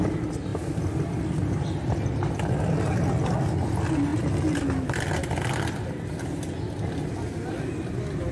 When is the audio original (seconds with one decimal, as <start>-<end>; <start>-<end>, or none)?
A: 0.0-8.3